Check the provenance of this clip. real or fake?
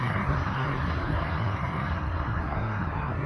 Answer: fake